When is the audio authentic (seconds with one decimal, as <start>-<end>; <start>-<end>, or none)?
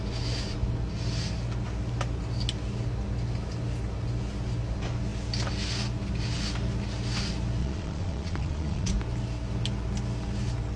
0.0-7.6; 8.9-10.8